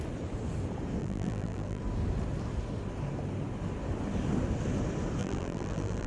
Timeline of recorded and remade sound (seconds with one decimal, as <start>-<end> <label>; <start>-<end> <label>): 0.0-1.0 recorded; 1.0-1.8 remade; 1.8-5.2 recorded; 5.2-6.1 remade

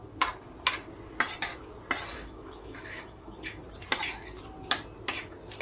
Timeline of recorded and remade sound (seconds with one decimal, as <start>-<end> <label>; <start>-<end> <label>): 0.0-2.1 recorded; 2.1-3.6 remade; 3.6-5.6 recorded

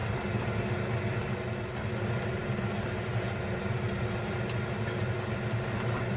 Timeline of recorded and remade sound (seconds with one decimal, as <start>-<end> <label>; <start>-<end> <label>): 0.0-6.2 recorded

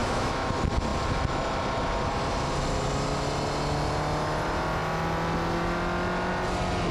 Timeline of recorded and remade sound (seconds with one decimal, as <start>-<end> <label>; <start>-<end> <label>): 0.0-0.5 remade; 0.5-6.9 recorded